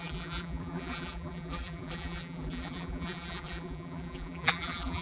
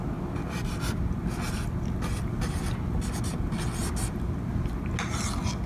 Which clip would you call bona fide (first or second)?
second